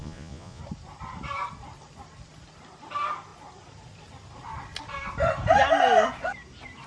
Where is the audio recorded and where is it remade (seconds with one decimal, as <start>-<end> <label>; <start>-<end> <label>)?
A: 0.0-0.6 remade; 0.6-6.9 recorded

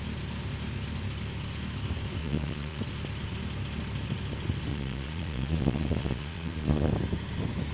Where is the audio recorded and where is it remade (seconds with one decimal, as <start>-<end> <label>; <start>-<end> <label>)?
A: 0.0-2.2 recorded; 2.2-2.8 remade; 2.8-4.7 recorded; 4.7-6.9 remade; 6.9-7.7 recorded

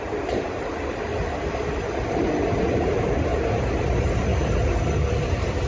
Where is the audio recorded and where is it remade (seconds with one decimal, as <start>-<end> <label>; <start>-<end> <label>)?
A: 0.0-1.1 remade; 1.1-2.5 recorded; 2.5-3.3 remade; 3.3-3.8 recorded; 3.8-4.3 remade; 4.3-5.3 recorded; 5.3-5.7 remade

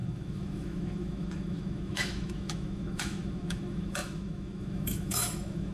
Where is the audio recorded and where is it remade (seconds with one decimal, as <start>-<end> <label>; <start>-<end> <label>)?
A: 0.0-5.7 remade

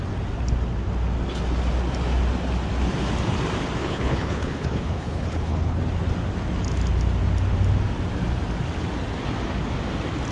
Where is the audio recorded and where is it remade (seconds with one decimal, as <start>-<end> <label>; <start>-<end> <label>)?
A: 0.0-3.8 recorded; 3.8-5.8 remade; 5.8-10.3 recorded

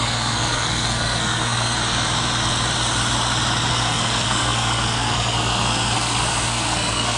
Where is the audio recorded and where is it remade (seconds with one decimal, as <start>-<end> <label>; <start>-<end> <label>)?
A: 0.0-1.8 remade; 1.8-3.7 recorded; 3.7-7.2 remade

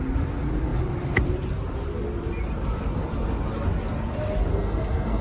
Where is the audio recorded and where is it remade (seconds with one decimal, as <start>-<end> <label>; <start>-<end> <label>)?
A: 0.0-4.5 recorded; 4.5-5.2 remade